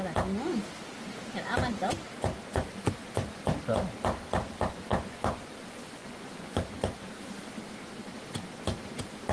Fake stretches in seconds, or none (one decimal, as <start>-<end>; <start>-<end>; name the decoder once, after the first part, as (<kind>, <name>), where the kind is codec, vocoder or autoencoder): 2.5-3.4 (vocoder, Vocos); 4.9-6.6